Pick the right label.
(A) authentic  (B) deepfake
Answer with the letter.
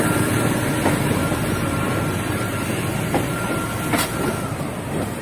B